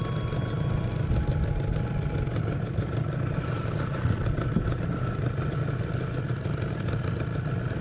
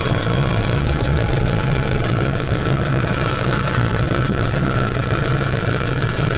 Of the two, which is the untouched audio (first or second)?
first